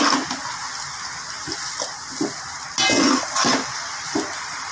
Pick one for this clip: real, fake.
real